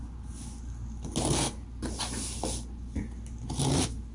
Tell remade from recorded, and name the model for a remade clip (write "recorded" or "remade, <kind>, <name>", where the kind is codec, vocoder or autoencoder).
recorded